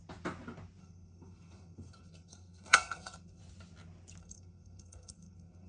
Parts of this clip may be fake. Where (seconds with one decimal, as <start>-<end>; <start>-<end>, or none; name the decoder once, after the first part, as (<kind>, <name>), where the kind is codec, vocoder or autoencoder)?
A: 0.8-3.4 (codec, SNAC); 4.2-5.7